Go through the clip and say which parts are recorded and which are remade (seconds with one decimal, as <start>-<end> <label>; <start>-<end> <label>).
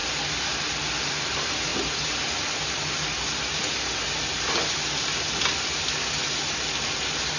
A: 0.0-7.4 recorded